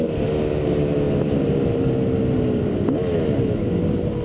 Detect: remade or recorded recorded